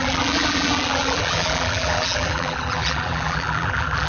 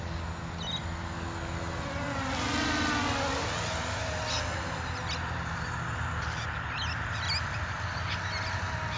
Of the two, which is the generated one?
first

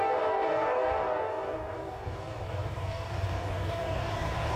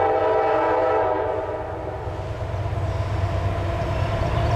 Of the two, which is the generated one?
first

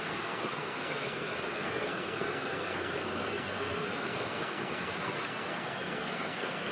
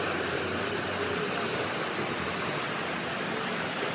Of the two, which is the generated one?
first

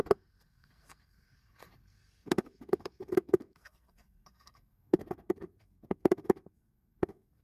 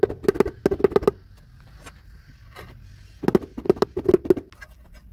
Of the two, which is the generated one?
first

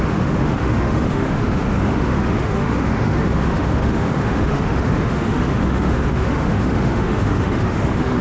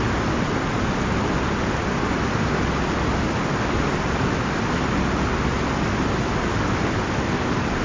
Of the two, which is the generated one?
first